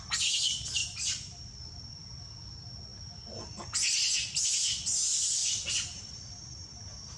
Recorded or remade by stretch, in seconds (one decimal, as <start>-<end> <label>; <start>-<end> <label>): 0.0-0.8 recorded; 0.8-1.6 remade; 1.6-5.4 recorded; 5.4-6.8 remade; 6.8-7.2 recorded